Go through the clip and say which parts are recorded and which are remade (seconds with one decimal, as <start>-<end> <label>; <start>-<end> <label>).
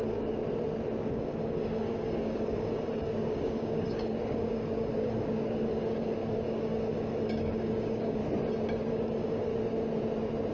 0.0-0.4 remade; 0.4-1.0 recorded; 1.0-8.2 remade; 8.2-8.9 recorded; 8.9-9.5 remade; 9.5-10.5 recorded